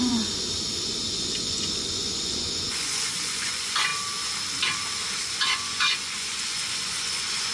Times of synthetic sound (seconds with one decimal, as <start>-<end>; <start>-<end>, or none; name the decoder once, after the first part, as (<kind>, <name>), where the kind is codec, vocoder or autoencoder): 0.0-3.9 (vocoder, Vocos); 5.4-7.5